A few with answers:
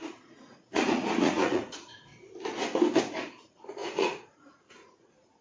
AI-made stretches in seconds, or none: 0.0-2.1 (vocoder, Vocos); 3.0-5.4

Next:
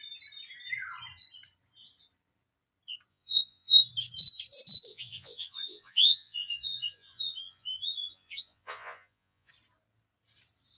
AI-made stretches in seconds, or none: 3.1-3.9 (vocoder, Vocos); 4.9-9.5

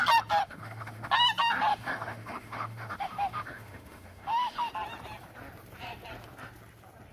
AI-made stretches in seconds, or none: 0.4-1.1 (autoencoder, DAC-VAE); 1.7-4.7

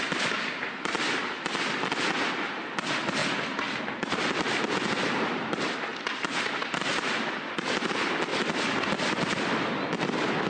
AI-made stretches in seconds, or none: none

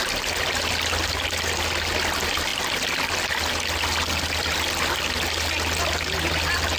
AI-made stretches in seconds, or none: none

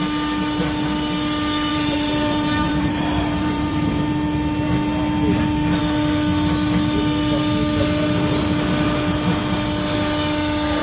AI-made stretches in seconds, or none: 1.7-4.0 (vocoder, BigVGAN v2)